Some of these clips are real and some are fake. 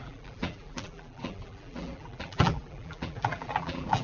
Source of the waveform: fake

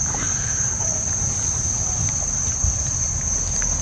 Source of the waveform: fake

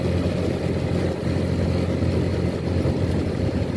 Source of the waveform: real